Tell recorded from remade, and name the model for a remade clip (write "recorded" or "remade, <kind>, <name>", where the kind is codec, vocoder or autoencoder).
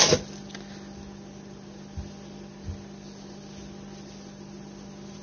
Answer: recorded